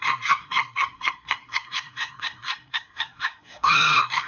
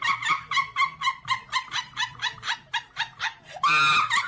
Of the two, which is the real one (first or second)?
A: second